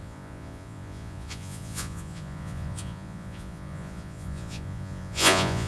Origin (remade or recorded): remade